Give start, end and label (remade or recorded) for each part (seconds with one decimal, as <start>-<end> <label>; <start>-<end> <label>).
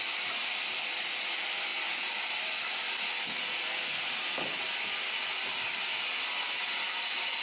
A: 0.0-1.7 remade; 1.7-4.3 recorded; 4.3-7.4 remade